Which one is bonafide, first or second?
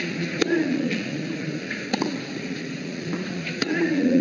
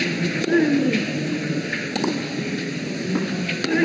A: second